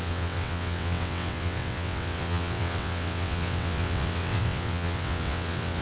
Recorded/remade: remade